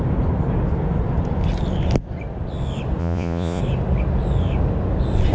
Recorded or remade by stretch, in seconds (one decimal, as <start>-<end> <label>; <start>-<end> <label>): 0.0-3.0 recorded; 3.0-3.6 remade; 3.6-5.3 recorded